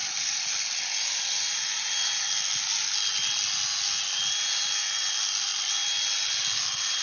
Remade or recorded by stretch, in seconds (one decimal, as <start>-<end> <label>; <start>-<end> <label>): 0.0-2.1 remade; 2.1-7.0 recorded

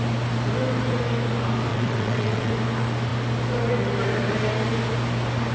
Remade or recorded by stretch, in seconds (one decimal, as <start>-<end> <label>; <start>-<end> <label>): 0.0-1.7 recorded; 1.7-2.5 remade; 2.5-5.5 recorded

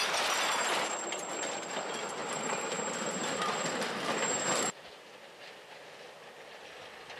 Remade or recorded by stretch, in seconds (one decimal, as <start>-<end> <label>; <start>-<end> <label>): 0.0-2.2 recorded; 2.2-4.9 remade; 4.9-7.2 recorded